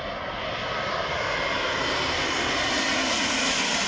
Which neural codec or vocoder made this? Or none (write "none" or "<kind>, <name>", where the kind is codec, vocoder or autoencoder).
none